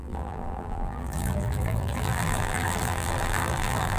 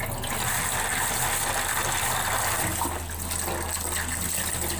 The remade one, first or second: first